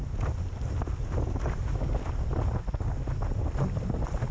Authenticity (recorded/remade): recorded